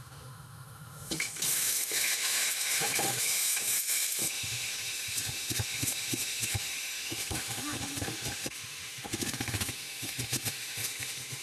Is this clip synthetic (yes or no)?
yes